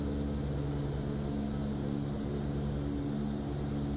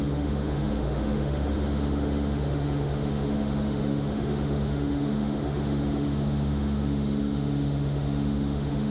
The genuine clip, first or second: first